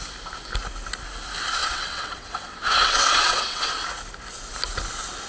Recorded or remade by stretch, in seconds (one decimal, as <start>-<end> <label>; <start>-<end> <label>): 0.0-1.6 recorded; 1.6-3.7 remade; 3.7-5.3 recorded